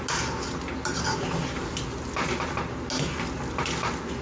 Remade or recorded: recorded